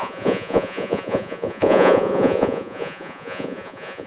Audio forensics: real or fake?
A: fake